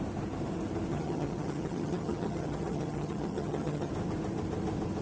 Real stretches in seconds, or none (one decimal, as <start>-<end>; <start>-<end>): 0.0-0.9; 3.9-5.0